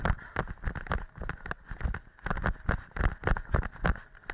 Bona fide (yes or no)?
yes